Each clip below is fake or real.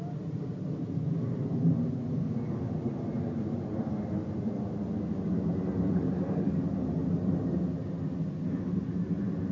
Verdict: real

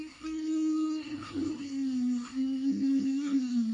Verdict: fake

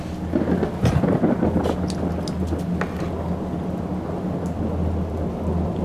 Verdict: real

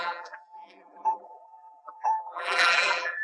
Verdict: fake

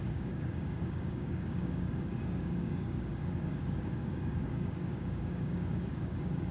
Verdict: fake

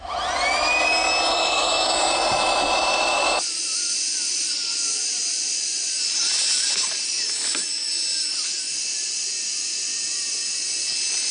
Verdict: real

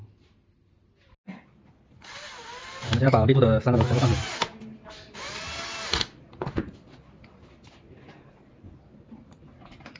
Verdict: real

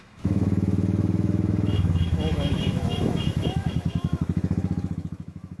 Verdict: fake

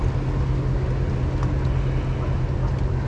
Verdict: real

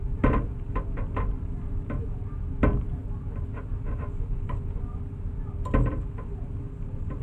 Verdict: real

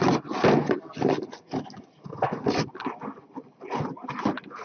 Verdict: real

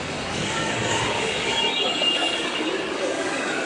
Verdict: fake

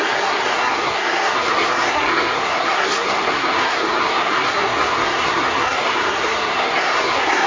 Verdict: fake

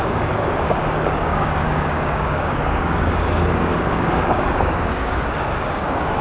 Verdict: fake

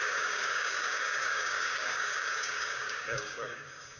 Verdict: fake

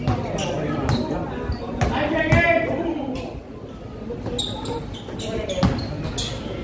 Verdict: real